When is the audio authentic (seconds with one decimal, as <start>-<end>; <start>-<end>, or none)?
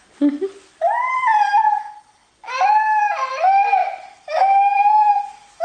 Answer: 0.0-5.6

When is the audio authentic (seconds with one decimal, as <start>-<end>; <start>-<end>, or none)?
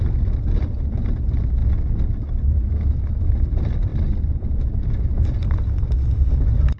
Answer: 0.0-6.8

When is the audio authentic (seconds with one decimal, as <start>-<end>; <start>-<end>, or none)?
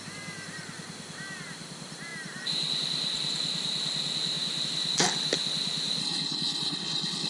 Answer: 0.0-6.0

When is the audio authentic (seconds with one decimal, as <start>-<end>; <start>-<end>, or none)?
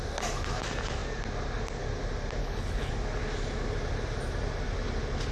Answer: 0.0-2.4; 2.9-5.3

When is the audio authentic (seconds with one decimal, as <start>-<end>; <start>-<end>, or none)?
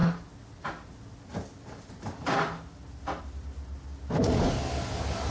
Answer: 0.0-5.3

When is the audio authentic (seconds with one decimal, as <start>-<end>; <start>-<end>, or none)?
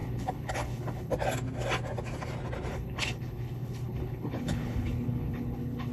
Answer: 1.1-2.7